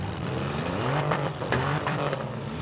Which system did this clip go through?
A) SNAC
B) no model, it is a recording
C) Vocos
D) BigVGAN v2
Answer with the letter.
D